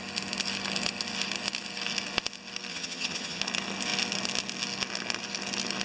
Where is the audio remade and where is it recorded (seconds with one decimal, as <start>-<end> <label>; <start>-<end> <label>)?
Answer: 0.0-2.7 recorded; 2.7-3.4 remade; 3.4-5.8 recorded